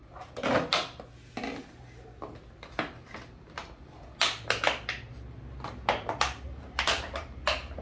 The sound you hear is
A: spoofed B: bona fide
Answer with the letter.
B